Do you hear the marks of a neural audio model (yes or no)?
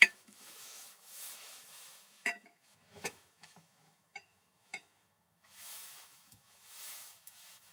yes